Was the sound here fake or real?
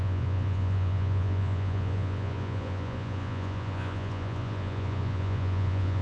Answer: fake